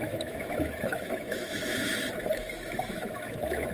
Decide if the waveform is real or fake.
fake